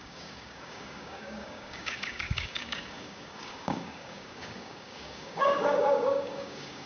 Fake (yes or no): yes